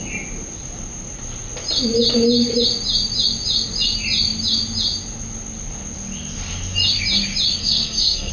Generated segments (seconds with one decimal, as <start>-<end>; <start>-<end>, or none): 7.6-8.3